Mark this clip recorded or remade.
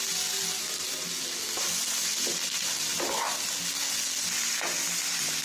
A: recorded